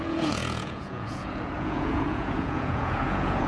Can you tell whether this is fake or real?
fake